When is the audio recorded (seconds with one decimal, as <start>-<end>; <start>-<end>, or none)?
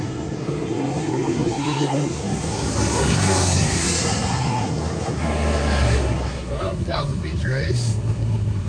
none